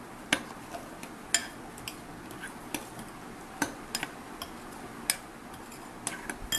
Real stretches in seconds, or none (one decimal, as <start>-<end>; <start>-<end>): 0.0-6.6